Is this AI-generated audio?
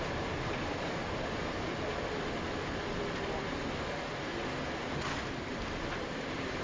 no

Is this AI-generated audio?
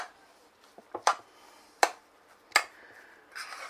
no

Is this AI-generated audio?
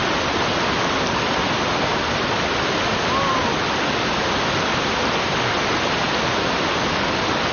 no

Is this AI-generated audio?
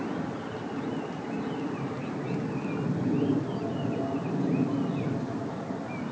no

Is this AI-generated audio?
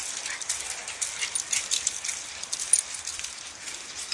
no